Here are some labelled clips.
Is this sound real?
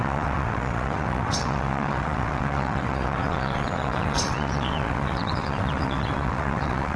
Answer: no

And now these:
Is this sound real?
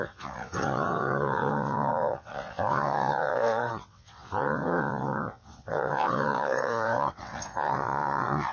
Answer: no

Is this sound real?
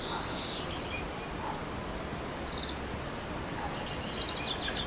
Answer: yes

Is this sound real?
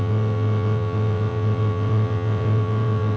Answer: no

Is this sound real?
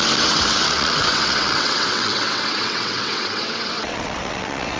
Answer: no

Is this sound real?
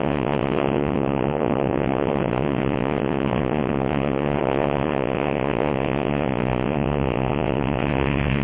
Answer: no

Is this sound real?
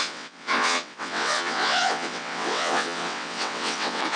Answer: no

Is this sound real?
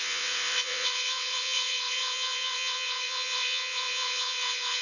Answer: no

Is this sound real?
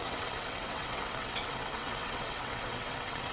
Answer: no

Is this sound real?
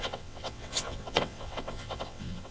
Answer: no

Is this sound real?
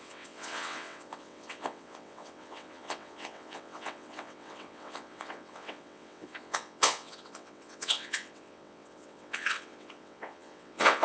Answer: no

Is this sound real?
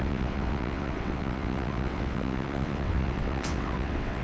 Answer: no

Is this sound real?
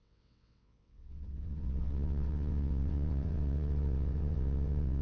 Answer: no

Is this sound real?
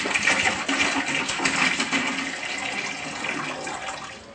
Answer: yes